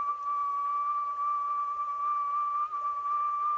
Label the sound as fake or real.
real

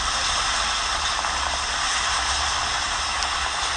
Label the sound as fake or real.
real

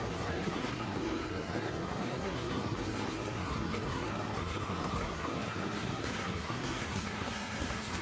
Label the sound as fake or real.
fake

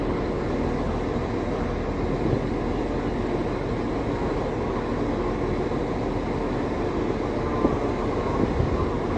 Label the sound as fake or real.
real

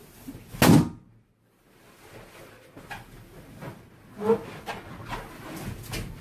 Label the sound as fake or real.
real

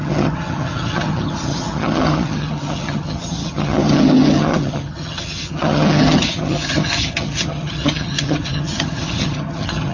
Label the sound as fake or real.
fake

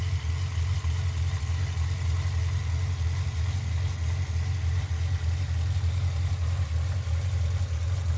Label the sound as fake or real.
real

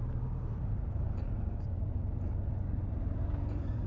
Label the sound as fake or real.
fake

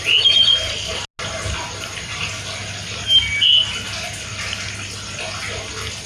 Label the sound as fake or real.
real